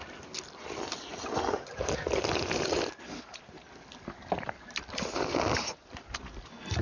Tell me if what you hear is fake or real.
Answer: real